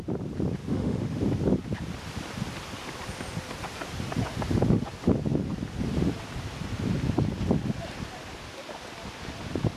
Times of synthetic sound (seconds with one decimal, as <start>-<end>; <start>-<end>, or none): 0.6-1.2